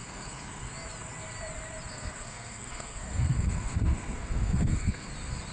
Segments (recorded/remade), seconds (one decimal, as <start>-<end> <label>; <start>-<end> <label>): 0.0-0.7 remade; 0.7-1.9 recorded; 1.9-5.1 remade; 5.1-5.5 recorded